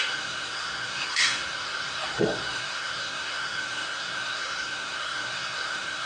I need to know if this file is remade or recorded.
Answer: remade